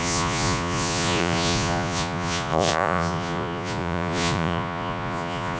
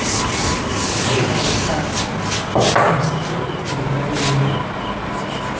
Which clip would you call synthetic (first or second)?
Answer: first